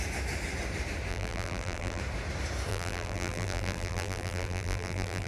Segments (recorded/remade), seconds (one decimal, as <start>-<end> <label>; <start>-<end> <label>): 0.0-1.1 recorded; 1.1-2.0 remade; 2.0-2.7 recorded; 2.7-5.3 remade